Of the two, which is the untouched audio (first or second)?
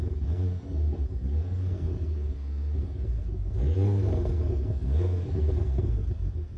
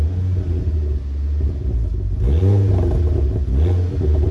second